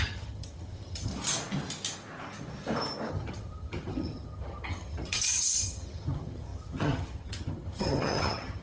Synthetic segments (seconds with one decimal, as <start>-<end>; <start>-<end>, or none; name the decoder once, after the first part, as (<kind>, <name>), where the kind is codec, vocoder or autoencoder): 0.0-1.1 (vocoder, HiFi-GAN); 3.1-8.6